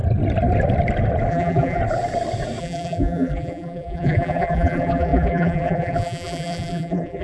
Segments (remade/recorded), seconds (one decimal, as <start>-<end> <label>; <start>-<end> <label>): 0.0-1.3 recorded; 1.3-1.8 remade; 1.8-2.6 recorded; 2.6-7.2 remade